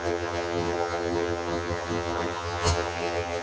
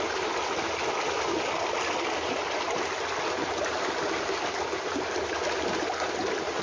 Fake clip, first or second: first